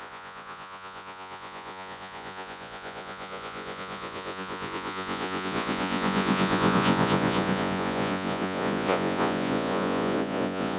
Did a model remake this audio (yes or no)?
yes